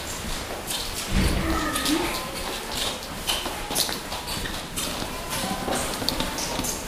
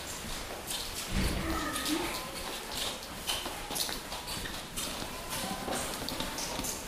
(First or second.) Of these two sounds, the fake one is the second